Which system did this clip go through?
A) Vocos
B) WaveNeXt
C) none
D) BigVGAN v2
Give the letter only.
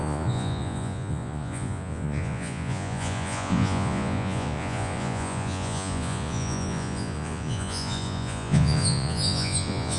A